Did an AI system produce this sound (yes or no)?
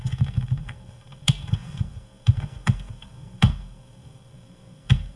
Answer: yes